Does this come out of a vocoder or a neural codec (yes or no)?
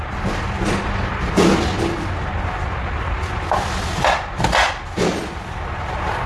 no